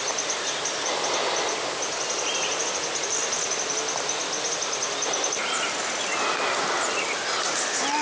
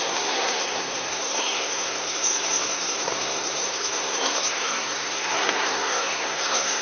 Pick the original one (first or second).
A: first